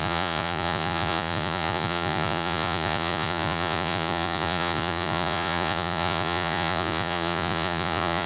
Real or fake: fake